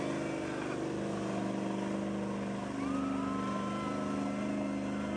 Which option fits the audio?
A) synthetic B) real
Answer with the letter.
B